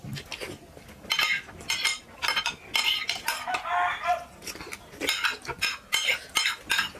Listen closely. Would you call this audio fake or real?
real